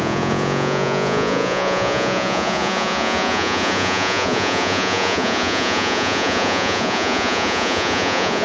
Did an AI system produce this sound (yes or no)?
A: yes